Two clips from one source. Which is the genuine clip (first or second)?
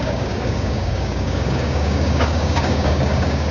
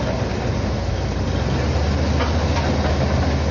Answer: second